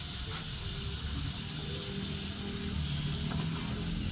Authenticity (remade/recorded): recorded